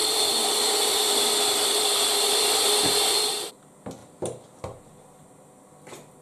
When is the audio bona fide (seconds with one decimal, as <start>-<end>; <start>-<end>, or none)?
3.5-6.2